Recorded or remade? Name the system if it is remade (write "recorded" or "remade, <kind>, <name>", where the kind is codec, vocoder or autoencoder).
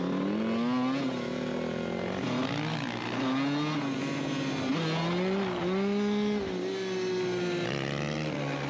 recorded